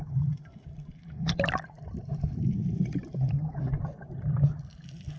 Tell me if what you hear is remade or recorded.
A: remade